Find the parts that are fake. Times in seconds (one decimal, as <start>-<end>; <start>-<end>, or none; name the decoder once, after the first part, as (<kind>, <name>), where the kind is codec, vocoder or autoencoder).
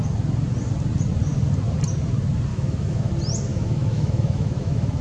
2.5-3.1 (autoencoder, DAC-VAE); 3.5-5.0